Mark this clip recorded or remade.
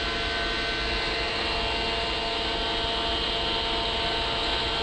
recorded